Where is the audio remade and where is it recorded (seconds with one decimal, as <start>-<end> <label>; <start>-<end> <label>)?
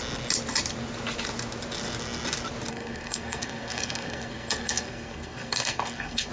0.0-2.7 recorded; 2.7-6.3 remade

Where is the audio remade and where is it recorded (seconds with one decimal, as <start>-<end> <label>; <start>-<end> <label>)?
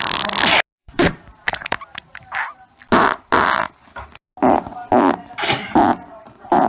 0.0-0.8 recorded; 0.8-2.0 remade; 2.0-5.9 recorded; 5.9-6.7 remade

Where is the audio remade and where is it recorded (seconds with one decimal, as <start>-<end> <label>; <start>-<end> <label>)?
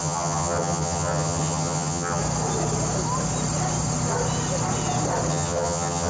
0.0-2.2 remade; 2.2-5.3 recorded; 5.3-6.1 remade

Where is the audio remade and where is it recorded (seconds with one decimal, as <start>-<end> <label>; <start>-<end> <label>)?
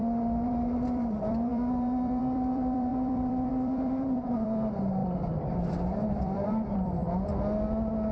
0.0-7.0 remade; 7.0-8.1 recorded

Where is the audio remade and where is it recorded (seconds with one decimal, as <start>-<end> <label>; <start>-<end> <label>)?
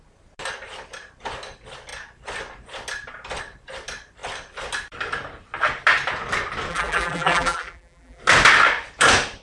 0.0-6.7 recorded; 6.7-8.2 remade; 8.2-9.4 recorded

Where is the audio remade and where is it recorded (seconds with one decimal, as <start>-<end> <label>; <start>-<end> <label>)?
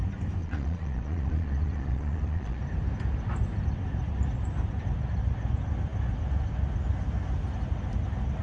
0.0-0.4 recorded; 0.4-2.6 remade; 2.6-8.4 recorded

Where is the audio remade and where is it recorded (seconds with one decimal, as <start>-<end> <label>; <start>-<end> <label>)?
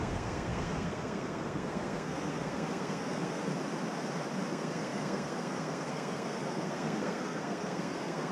0.0-3.5 remade; 3.5-4.5 recorded; 4.5-8.3 remade